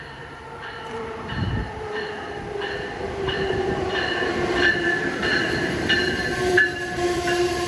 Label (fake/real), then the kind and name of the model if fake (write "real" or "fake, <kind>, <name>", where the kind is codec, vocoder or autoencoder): fake, vocoder, BigVGAN v2